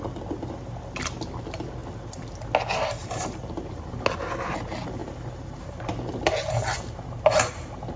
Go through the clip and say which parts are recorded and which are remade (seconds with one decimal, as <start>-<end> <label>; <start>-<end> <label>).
0.0-3.0 recorded; 3.0-3.9 remade; 3.9-5.0 recorded; 5.0-5.7 remade; 5.7-8.0 recorded